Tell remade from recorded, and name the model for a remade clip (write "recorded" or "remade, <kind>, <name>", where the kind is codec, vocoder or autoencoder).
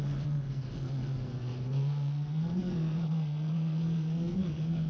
remade, codec, SNAC